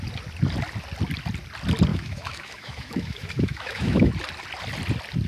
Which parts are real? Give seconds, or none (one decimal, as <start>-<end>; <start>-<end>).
0.0-1.9; 4.1-5.3